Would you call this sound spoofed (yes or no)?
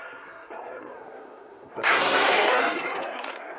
yes